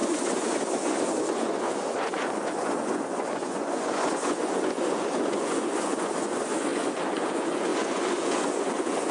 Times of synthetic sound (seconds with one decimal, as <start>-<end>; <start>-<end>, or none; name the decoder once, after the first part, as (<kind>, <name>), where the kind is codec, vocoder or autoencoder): 0.0-9.1 (vocoder, Vocos)